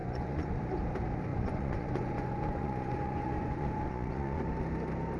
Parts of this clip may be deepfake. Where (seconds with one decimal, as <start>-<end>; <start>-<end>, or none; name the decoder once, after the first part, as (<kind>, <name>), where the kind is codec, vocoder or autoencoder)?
0.0-0.6 (vocoder, Vocos); 1.3-4.4